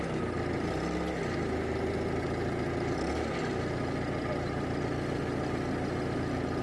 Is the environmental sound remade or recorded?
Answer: recorded